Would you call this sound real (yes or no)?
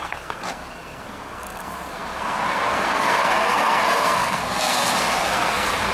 no